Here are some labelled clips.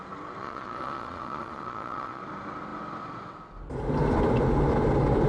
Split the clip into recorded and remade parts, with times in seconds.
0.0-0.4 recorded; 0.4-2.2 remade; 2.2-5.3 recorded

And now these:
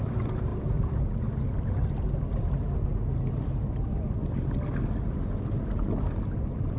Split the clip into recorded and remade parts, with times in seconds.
0.0-0.5 recorded; 0.5-1.9 remade; 1.9-6.8 recorded

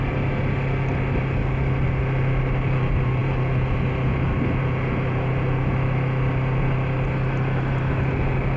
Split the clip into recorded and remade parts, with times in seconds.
0.0-8.6 recorded

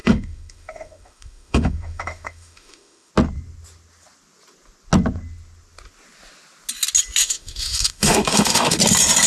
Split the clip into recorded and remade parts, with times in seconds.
0.0-3.1 remade; 3.1-7.2 recorded; 7.2-8.8 remade; 8.8-9.3 recorded

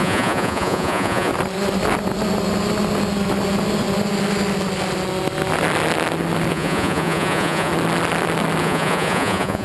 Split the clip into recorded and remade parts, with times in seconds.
0.0-1.3 remade; 1.3-6.5 recorded; 6.5-7.7 remade; 7.7-8.6 recorded; 8.6-9.6 remade